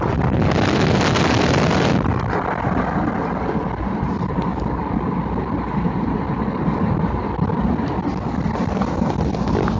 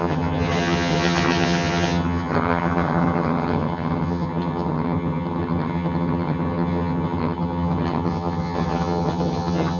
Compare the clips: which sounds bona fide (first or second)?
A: first